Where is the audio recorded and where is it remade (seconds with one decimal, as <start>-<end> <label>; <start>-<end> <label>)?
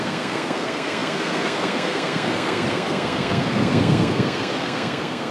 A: 0.0-5.3 remade